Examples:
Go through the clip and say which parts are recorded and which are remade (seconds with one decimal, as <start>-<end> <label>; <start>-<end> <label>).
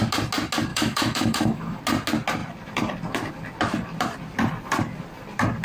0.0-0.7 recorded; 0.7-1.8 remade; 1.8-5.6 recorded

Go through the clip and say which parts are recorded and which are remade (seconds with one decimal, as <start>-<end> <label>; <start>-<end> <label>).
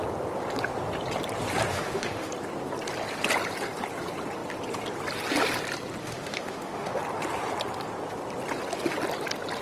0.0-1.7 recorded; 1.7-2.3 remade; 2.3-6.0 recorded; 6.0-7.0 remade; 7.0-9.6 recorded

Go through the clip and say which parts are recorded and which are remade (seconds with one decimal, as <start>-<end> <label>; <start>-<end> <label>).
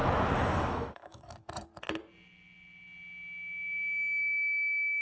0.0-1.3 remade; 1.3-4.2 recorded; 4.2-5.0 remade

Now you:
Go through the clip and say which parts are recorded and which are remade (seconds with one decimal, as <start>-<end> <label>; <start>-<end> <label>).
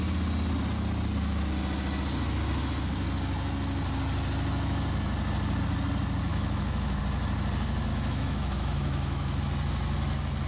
0.0-6.3 recorded; 6.3-7.0 remade; 7.0-7.9 recorded; 7.9-9.4 remade; 9.4-10.5 recorded